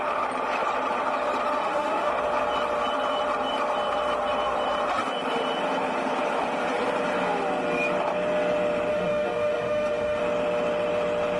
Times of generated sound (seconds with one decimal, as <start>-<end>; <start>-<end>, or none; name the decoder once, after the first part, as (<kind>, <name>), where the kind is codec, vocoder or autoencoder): 1.6-2.1 (autoencoder, DAC-VAE); 8.9-10.2